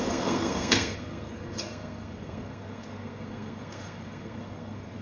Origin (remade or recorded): remade